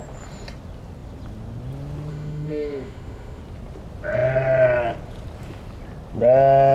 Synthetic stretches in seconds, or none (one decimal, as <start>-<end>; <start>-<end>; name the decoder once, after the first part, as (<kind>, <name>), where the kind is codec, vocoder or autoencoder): 2.1-3.4 (autoencoder, DAC-VAE)